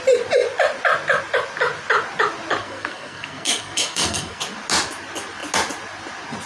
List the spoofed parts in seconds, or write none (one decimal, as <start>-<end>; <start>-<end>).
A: 2.6-4.4